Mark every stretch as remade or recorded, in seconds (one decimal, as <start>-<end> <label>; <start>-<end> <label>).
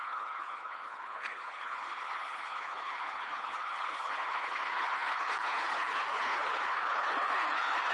0.0-7.9 remade